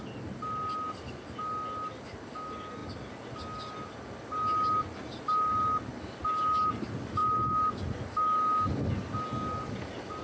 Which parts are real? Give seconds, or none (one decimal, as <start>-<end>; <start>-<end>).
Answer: 0.0-10.2